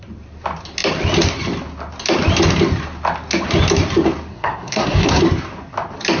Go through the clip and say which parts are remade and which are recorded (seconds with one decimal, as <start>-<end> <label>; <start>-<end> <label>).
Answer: 0.0-4.3 recorded; 4.3-5.2 remade; 5.2-6.2 recorded